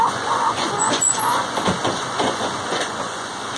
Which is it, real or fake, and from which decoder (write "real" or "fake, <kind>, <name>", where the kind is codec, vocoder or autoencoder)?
fake, vocoder, Vocos